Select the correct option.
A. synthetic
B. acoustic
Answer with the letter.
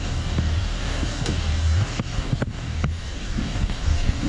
A